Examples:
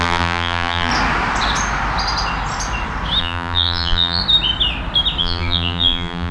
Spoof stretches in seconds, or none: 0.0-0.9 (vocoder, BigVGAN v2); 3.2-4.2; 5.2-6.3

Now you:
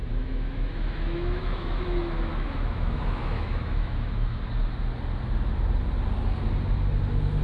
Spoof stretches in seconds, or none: 0.0-4.3 (autoencoder, DAC-VAE)